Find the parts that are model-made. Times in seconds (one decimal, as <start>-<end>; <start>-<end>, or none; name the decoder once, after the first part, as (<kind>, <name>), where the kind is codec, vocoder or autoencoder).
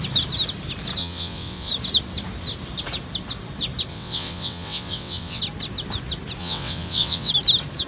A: 1.0-1.7 (vocoder, WaveNeXt); 3.9-5.4; 6.4-7.3